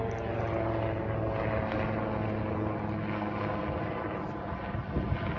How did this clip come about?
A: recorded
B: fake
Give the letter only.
A